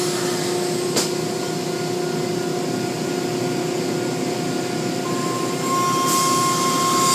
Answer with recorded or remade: recorded